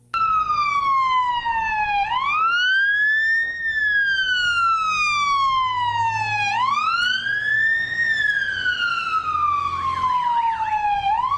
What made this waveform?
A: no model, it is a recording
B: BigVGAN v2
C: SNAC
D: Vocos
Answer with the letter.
A